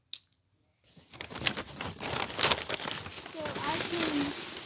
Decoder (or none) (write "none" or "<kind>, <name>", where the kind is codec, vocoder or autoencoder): none